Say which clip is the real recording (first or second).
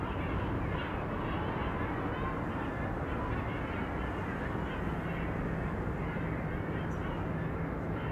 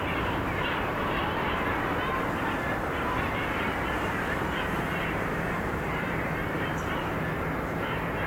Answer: first